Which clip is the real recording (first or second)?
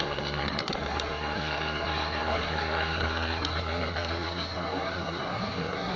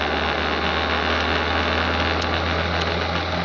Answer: second